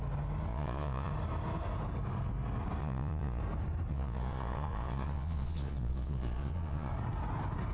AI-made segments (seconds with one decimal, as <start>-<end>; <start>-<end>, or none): 0.5-1.1; 2.8-3.4; 3.9-6.9